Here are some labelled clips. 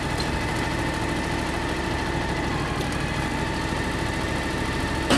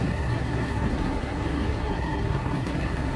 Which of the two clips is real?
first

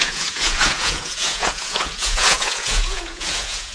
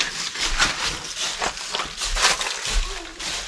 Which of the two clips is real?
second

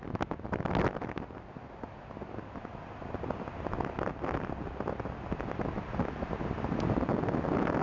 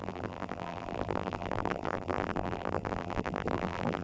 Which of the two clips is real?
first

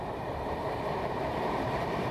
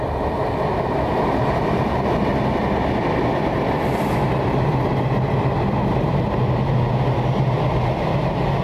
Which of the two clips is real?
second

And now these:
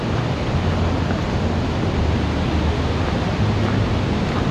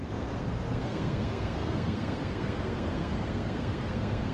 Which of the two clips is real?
first